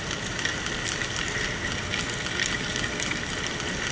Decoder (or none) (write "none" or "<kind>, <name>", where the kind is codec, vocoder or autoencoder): none